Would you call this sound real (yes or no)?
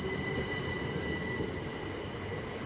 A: yes